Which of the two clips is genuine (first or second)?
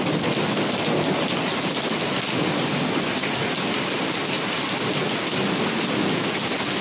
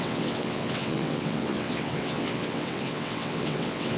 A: first